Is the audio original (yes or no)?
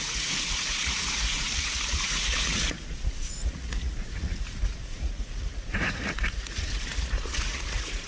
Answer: no